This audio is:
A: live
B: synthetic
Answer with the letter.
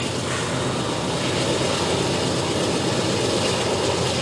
A